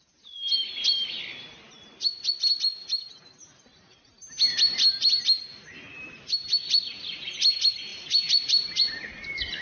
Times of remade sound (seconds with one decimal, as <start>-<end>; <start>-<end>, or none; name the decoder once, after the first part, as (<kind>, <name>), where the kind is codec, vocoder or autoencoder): none